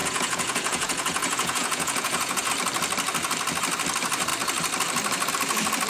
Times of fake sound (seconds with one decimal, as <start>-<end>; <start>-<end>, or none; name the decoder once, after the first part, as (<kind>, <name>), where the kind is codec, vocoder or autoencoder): 0.0-2.5 (vocoder, Vocos)